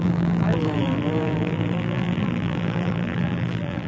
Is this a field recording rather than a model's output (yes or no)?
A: no